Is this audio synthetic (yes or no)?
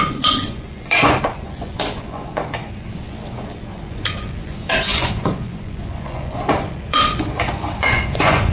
yes